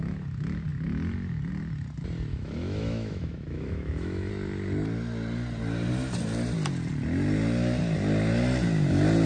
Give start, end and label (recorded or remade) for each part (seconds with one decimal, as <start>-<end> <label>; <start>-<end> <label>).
0.0-2.3 recorded; 2.3-4.3 remade; 4.3-9.3 recorded